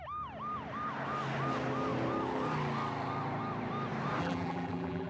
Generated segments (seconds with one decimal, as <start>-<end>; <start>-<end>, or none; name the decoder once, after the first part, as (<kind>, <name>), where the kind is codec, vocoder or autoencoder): 4.2-5.1 (vocoder, BigVGAN v2)